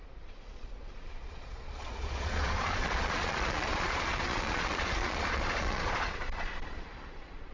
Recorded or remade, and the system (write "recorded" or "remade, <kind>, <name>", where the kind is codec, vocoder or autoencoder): remade, vocoder, Vocos